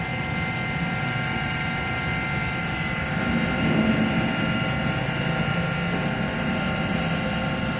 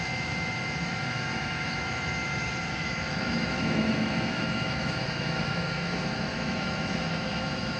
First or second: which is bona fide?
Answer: first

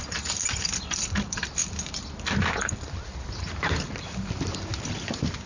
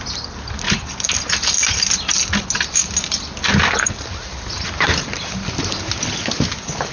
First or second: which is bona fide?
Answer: second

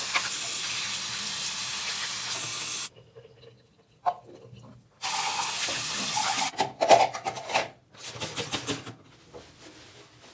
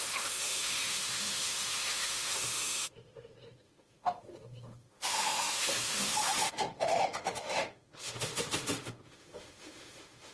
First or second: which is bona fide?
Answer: first